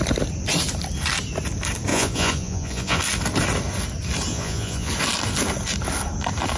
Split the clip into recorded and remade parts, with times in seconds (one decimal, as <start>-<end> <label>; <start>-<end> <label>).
0.0-1.9 recorded; 1.9-3.0 remade; 3.0-4.3 recorded; 4.3-4.9 remade; 4.9-6.6 recorded